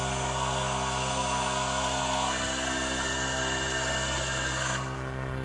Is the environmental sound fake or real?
fake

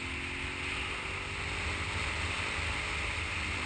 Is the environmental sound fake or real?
real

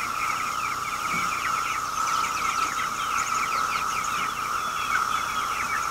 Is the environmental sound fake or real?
fake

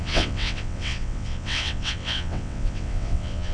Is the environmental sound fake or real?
fake